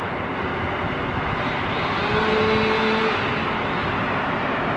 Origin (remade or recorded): recorded